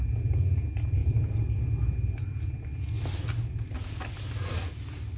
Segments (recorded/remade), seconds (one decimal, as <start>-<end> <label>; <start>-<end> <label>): 0.0-1.0 recorded; 1.0-2.2 remade; 2.2-5.2 recorded